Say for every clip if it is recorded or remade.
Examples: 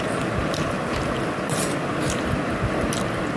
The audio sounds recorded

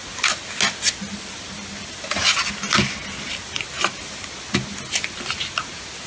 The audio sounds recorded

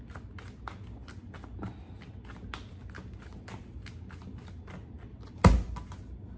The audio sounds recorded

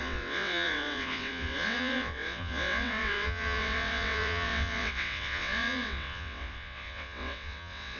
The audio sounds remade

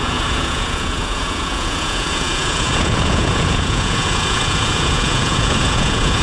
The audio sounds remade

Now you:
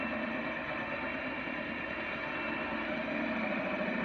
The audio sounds remade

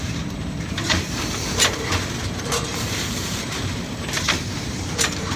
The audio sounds remade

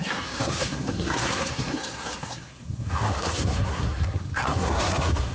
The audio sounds remade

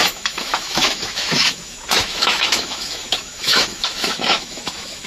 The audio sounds remade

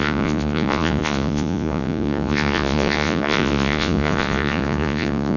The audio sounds remade